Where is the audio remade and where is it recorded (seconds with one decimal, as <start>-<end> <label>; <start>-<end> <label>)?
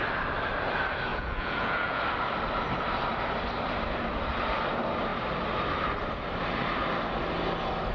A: 0.0-1.1 recorded; 1.1-2.0 remade; 2.0-7.9 recorded